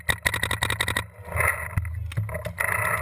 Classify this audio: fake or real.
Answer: real